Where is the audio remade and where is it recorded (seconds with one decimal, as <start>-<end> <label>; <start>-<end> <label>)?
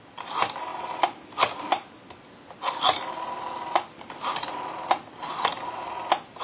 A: 0.0-6.4 recorded